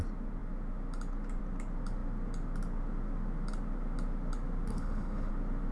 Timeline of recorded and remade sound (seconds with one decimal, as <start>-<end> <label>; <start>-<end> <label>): 0.0-4.7 recorded; 4.7-5.3 remade; 5.3-5.7 recorded